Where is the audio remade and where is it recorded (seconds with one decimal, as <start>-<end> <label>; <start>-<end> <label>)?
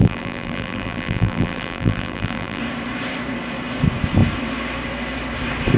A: 0.0-2.6 remade; 2.6-5.8 recorded